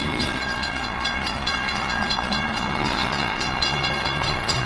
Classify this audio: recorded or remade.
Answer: remade